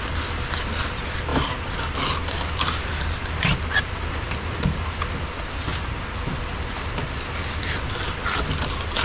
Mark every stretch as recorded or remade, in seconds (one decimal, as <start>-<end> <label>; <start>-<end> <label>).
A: 0.0-9.0 recorded